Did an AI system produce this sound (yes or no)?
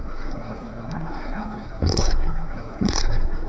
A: yes